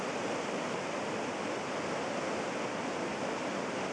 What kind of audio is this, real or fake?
real